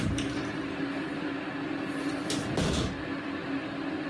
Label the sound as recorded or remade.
recorded